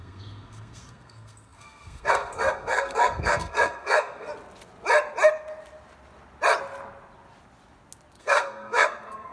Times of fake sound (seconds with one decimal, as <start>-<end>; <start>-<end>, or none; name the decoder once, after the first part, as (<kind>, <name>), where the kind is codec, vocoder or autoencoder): 0.0-4.3 (codec, SNAC); 8.2-9.3